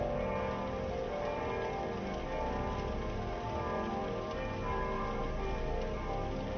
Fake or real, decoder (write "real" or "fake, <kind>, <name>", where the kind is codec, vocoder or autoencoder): real